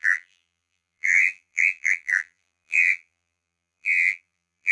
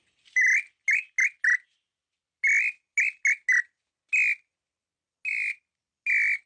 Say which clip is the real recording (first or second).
second